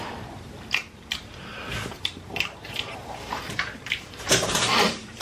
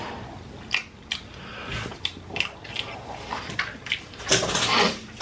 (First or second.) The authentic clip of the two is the second